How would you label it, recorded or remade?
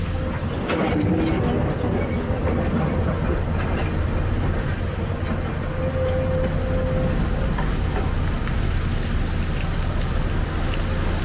recorded